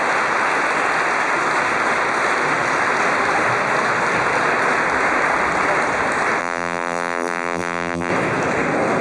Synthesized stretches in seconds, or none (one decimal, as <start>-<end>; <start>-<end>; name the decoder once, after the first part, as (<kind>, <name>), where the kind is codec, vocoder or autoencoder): 6.4-8.1 (vocoder, BigVGAN v2)